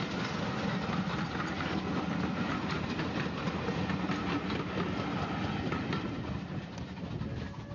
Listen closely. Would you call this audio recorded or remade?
recorded